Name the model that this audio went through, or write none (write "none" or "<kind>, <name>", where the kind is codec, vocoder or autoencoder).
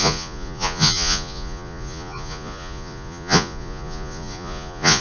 vocoder, Vocos